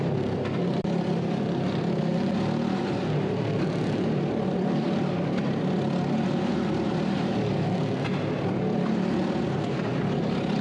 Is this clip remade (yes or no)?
no